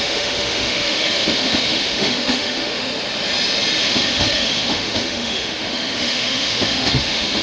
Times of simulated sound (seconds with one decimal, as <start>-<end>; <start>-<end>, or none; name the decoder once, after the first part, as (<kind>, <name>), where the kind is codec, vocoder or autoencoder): 0.0-2.9 (autoencoder, DAC-VAE); 3.8-7.4